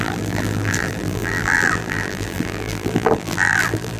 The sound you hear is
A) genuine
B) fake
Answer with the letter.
B